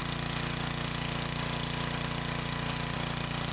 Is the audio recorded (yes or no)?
yes